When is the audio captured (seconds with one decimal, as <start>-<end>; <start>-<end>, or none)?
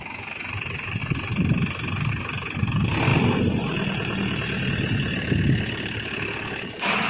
0.0-7.1